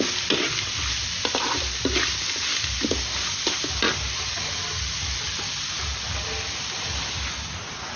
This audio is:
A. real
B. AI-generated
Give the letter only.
A